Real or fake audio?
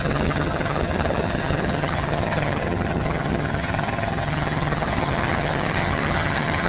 fake